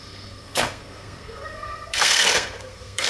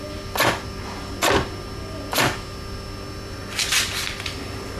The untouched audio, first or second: second